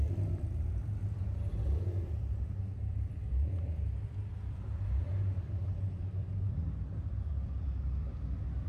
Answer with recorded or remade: remade